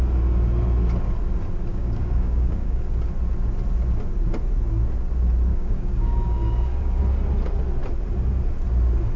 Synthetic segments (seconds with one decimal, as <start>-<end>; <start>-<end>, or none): 1.7-2.9; 5.5-7.0